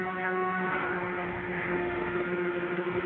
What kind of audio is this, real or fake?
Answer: fake